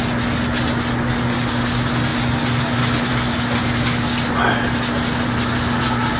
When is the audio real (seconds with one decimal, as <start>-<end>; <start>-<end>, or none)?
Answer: 0.0-6.2